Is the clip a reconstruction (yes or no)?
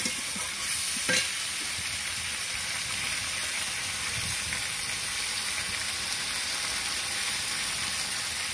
no